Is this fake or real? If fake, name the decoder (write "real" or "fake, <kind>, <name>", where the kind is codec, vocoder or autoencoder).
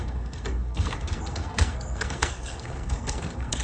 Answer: fake, codec, SNAC